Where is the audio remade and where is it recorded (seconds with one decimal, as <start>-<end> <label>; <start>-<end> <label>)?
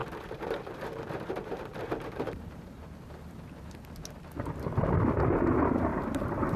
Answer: 0.0-3.2 remade; 3.2-5.9 recorded; 5.9-6.6 remade